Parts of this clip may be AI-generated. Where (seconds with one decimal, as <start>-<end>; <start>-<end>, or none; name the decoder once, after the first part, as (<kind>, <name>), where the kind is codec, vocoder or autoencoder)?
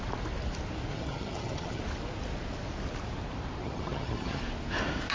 0.9-1.8 (vocoder, HiFi-GAN); 3.6-4.4